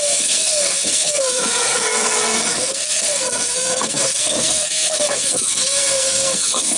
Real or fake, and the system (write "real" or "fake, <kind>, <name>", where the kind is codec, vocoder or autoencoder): fake, codec, SNAC